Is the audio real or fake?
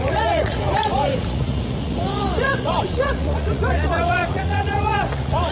fake